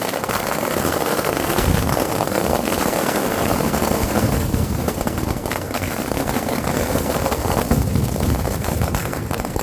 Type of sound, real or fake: fake